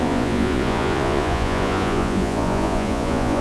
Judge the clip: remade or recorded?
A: remade